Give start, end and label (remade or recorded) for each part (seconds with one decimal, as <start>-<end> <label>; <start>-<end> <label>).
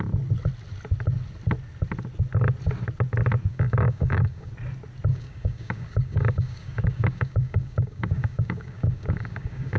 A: 0.0-3.5 recorded; 3.5-4.5 remade; 4.5-5.1 recorded; 5.1-9.8 remade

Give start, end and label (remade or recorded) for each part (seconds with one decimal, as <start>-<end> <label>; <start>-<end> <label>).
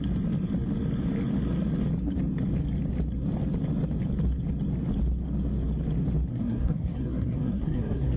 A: 0.0-6.3 recorded; 6.3-8.2 remade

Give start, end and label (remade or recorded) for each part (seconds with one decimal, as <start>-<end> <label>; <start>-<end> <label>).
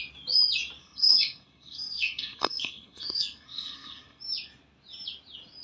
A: 0.0-0.8 recorded; 0.8-4.2 remade; 4.2-5.6 recorded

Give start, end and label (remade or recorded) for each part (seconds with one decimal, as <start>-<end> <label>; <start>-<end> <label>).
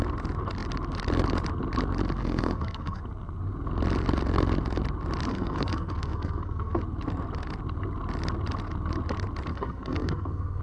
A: 0.0-2.2 recorded; 2.2-3.0 remade; 3.0-5.3 recorded; 5.3-6.8 remade; 6.8-9.5 recorded; 9.5-10.6 remade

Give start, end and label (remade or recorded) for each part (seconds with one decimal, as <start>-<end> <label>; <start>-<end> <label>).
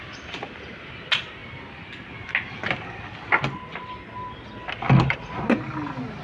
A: 0.0-6.2 recorded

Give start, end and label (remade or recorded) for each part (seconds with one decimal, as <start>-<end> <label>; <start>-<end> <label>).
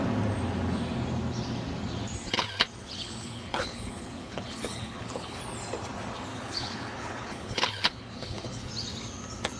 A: 0.0-2.8 recorded; 2.8-5.4 remade; 5.4-6.3 recorded; 6.3-8.7 remade; 8.7-9.6 recorded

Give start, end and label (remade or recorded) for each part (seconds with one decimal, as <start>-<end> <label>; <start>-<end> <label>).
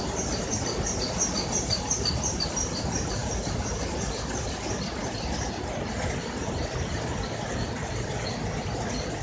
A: 0.0-9.2 recorded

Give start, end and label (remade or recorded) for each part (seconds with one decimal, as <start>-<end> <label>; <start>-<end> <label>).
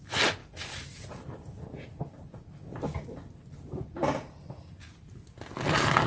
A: 0.0-6.1 recorded